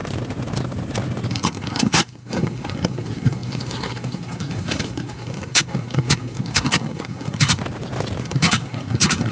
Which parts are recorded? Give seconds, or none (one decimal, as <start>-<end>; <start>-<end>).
0.0-1.3; 7.6-8.2